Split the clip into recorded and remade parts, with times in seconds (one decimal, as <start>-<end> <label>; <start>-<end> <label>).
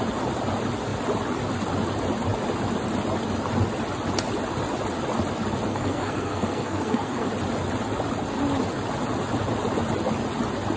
0.0-5.7 recorded; 5.7-7.3 remade; 7.3-10.8 recorded